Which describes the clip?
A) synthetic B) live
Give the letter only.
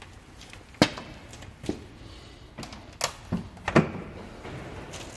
B